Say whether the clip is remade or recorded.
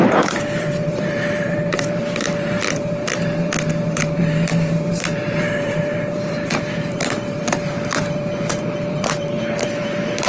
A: remade